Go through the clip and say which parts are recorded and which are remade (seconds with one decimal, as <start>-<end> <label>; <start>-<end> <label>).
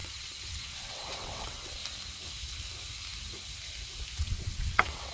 0.0-1.8 remade; 1.8-4.2 recorded; 4.2-5.1 remade